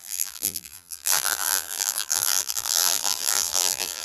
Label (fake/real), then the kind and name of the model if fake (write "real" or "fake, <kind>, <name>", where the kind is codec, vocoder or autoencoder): fake, vocoder, BigVGAN v2